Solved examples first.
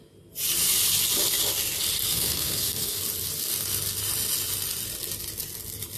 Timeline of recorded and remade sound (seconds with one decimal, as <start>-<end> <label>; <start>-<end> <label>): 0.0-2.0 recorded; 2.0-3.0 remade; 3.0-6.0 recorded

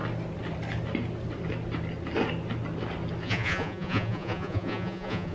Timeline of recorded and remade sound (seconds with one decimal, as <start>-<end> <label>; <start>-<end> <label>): 0.0-3.2 recorded; 3.2-5.3 remade

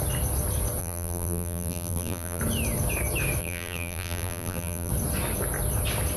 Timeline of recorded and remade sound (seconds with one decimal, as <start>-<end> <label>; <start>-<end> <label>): 0.0-0.8 recorded; 0.8-2.4 remade; 2.4-3.4 recorded; 3.4-4.9 remade; 4.9-6.2 recorded

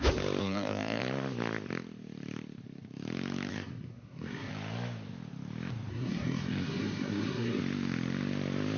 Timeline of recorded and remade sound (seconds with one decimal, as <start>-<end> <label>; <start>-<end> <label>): 0.0-0.4 recorded; 0.4-1.0 remade; 1.0-3.5 recorded; 3.5-4.5 remade; 4.5-5.9 recorded; 5.9-7.6 remade; 7.6-8.8 recorded

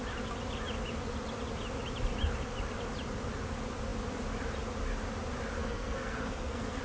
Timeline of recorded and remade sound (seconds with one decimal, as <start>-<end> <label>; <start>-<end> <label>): 0.0-5.6 recorded; 5.6-6.8 remade

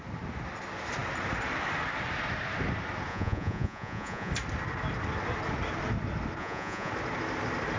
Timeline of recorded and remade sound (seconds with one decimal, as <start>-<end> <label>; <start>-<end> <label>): 0.0-3.1 recorded; 3.1-4.3 remade; 4.3-6.4 recorded; 6.4-6.9 remade; 6.9-7.8 recorded

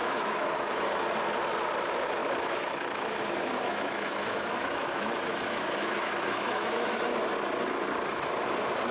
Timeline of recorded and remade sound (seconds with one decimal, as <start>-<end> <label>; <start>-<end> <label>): 0.0-0.9 remade; 0.9-2.2 recorded; 2.2-7.0 remade; 7.0-8.9 recorded